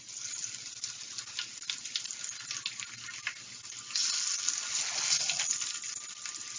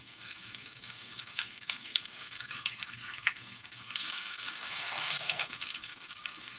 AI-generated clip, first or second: second